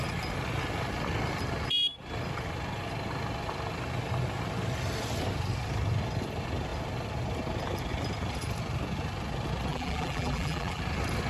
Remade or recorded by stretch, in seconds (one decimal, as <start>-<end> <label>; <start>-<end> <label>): 0.0-9.7 recorded; 9.7-10.8 remade; 10.8-11.3 recorded

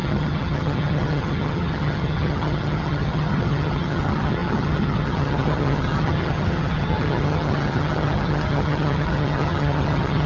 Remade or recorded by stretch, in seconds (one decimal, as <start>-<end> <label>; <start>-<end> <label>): 0.0-10.3 remade

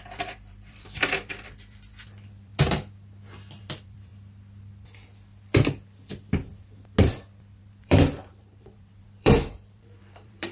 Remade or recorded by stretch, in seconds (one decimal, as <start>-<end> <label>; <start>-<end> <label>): 0.0-2.5 remade; 2.5-3.6 recorded; 3.6-4.1 remade; 4.1-7.6 recorded; 7.6-10.5 remade

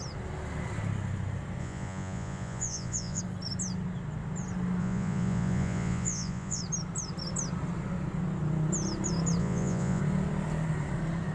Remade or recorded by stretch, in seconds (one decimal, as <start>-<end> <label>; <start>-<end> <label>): 0.0-1.6 recorded; 1.6-3.2 remade; 3.2-4.8 recorded; 4.8-6.6 remade; 6.6-9.4 recorded; 9.4-10.0 remade; 10.0-11.3 recorded

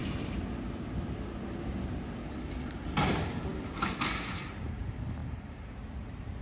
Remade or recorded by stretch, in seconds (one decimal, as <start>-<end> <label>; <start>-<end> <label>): 0.0-6.4 recorded